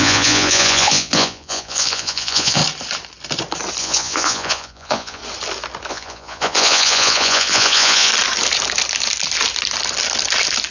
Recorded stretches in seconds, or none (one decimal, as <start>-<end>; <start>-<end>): 2.6-3.8; 5.2-5.9; 8.1-10.7